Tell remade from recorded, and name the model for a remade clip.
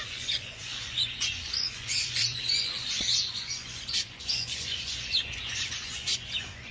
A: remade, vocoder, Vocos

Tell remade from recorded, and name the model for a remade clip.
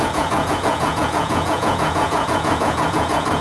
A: remade, vocoder, Vocos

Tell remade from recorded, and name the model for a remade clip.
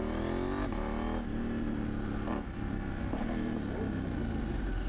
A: recorded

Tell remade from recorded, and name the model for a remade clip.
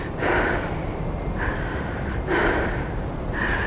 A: recorded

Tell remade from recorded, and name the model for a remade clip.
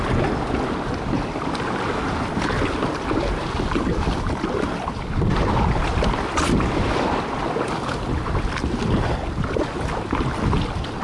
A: recorded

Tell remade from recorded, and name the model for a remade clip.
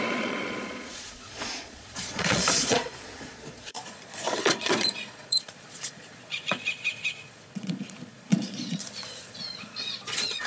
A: remade, vocoder, Vocos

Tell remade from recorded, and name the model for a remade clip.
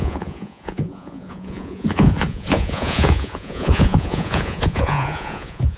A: remade, vocoder, Vocos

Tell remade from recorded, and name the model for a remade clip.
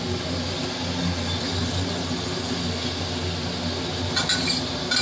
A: recorded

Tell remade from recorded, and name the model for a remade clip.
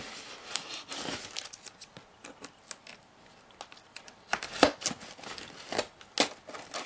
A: recorded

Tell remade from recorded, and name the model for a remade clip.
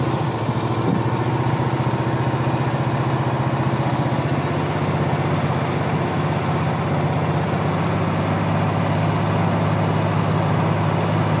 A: recorded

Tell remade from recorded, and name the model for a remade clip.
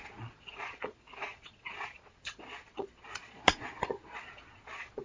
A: remade, vocoder, Vocos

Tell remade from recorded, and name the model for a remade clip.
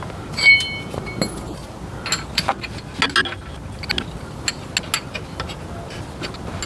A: recorded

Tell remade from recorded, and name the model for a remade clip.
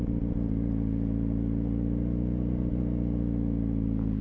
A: remade, vocoder, Vocos